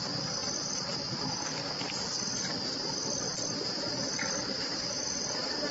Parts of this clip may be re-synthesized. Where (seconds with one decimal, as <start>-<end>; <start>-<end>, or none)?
none